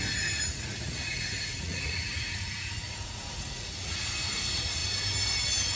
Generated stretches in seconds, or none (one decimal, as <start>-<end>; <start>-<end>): 0.5-4.0